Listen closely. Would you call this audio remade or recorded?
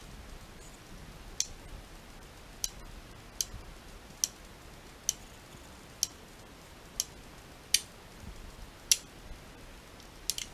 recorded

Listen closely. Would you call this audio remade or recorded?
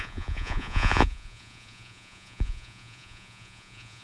remade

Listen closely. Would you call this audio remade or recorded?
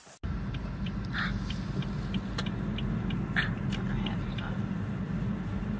recorded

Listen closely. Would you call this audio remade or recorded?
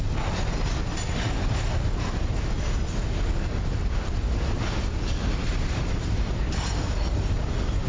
recorded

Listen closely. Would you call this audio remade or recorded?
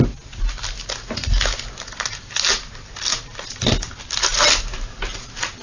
recorded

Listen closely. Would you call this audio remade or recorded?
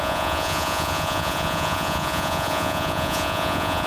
remade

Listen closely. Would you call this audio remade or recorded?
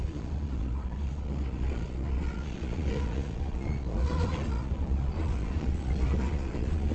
remade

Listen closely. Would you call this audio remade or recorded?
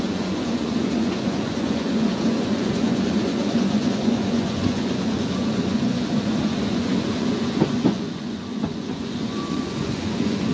remade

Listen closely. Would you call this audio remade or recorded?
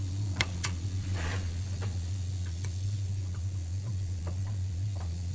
remade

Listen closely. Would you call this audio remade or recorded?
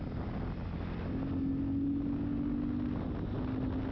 recorded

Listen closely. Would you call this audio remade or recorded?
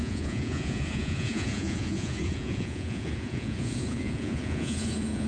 remade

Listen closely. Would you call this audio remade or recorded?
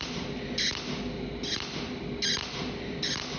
recorded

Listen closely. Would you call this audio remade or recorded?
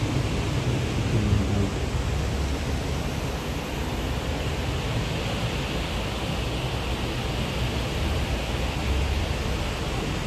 recorded